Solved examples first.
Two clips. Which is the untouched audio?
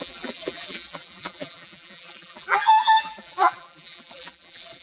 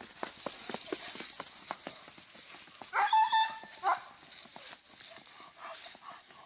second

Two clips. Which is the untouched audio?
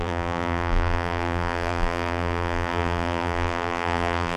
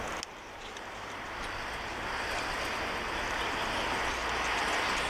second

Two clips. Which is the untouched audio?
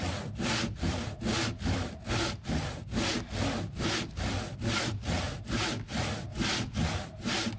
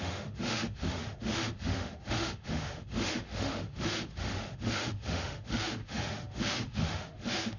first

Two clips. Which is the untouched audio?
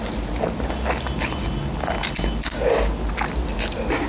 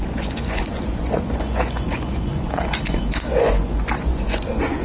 first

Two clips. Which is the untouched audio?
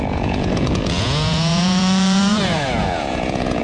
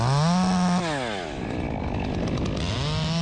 second